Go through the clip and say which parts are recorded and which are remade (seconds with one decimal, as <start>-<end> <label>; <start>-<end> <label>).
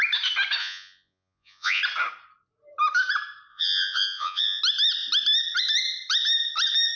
0.0-0.6 recorded; 0.6-1.8 remade; 1.8-3.5 recorded; 3.5-4.6 remade; 4.6-7.0 recorded